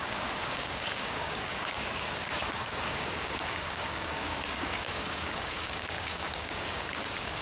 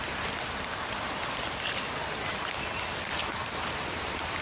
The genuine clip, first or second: second